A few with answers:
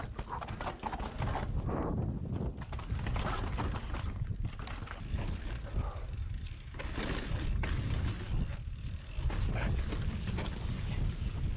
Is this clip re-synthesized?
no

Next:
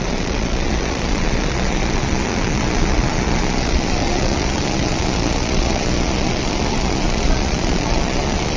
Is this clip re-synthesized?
yes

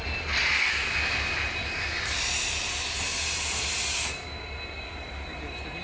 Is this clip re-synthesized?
no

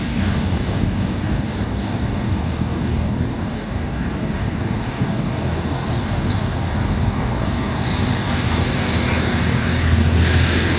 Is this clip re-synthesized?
yes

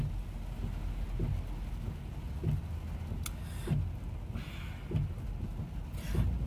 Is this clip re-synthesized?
no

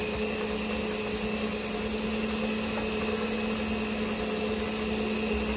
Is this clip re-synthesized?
no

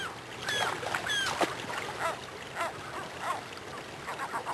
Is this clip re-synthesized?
no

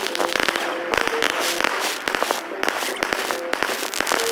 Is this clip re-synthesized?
no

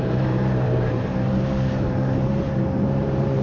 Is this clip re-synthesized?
yes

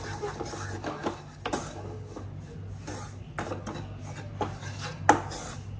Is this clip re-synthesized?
no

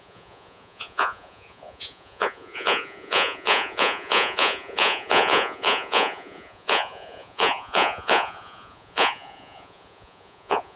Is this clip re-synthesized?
yes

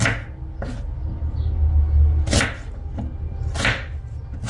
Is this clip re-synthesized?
no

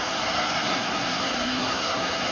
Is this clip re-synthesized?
yes